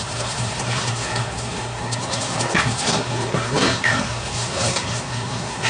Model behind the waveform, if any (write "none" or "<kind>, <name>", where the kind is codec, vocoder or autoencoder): codec, SNAC